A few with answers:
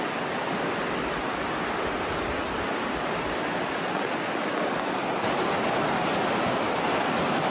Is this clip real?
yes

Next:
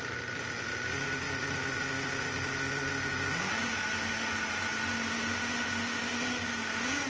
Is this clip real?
yes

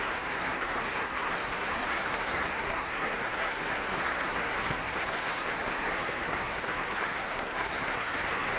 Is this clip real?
no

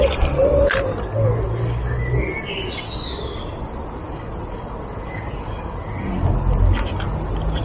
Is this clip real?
yes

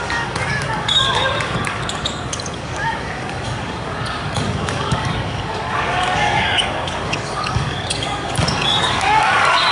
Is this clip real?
no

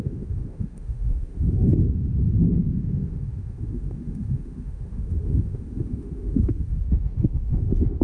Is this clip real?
no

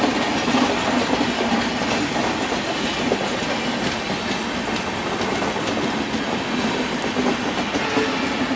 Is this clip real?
yes